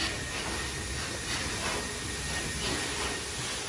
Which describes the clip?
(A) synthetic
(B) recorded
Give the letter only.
B